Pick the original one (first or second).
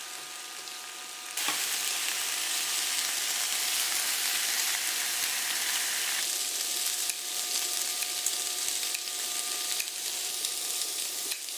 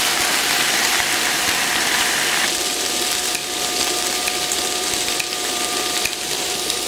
first